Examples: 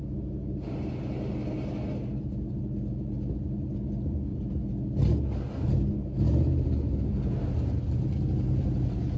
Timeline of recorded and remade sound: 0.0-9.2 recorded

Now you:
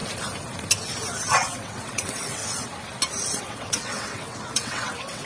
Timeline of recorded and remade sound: 0.0-1.3 recorded; 1.3-2.4 remade; 2.4-3.4 recorded; 3.4-5.3 remade

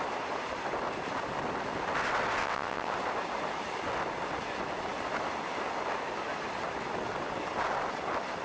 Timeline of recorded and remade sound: 0.0-2.4 recorded; 2.4-2.9 remade; 2.9-8.4 recorded

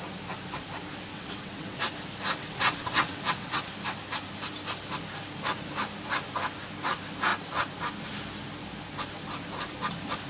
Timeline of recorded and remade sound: 0.0-1.1 recorded; 1.1-1.8 remade; 1.8-2.4 recorded; 2.4-3.7 remade; 3.7-10.3 recorded

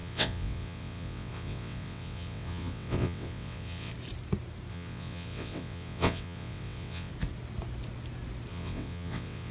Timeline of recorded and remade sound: 0.0-3.9 remade; 3.9-4.7 recorded; 4.7-7.1 remade; 7.1-8.5 recorded; 8.5-9.5 remade